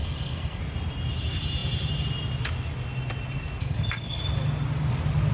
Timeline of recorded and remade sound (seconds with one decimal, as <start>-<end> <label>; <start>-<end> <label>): 0.0-0.6 remade; 0.6-3.6 recorded; 3.6-4.2 remade; 4.2-5.3 recorded